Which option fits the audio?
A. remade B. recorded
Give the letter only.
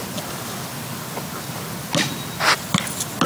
B